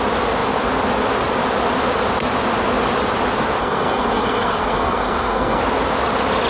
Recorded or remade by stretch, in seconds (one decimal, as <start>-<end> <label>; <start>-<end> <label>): 0.0-3.6 recorded; 3.6-5.6 remade; 5.6-6.5 recorded